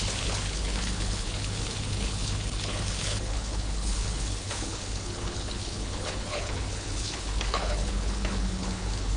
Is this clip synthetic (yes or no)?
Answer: yes